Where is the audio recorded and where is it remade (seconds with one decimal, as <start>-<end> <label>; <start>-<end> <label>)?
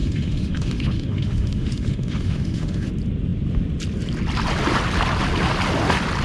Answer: 0.0-2.9 remade; 2.9-6.2 recorded